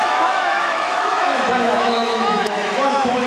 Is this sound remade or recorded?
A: remade